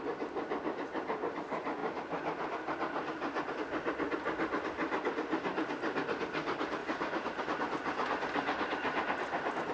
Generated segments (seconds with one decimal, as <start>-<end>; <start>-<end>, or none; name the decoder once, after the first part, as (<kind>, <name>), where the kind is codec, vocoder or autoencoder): 6.8-7.4 (vocoder, BigVGAN v2)